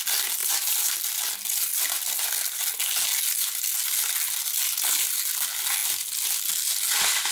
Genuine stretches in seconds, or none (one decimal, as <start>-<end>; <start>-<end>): 0.0-0.4; 1.0-4.6; 5.2-7.3